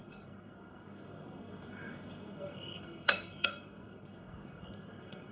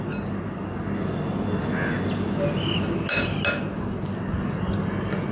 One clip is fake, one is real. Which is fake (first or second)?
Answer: first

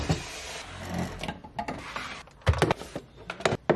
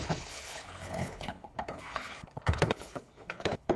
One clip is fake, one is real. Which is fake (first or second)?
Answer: second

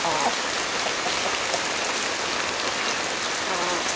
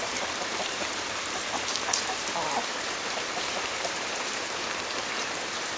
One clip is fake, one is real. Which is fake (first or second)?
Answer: second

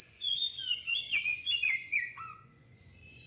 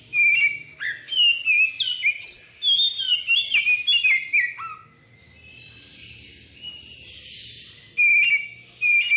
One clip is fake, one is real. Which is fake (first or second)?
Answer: first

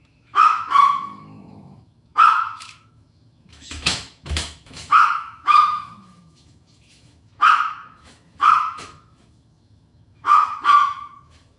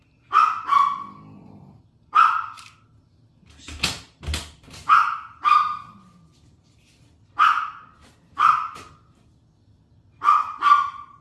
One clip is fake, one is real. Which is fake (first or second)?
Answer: first